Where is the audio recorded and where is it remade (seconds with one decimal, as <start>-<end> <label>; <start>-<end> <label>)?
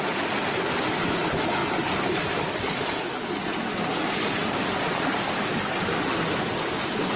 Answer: 0.0-7.2 recorded